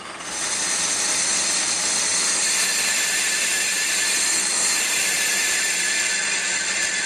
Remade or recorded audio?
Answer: recorded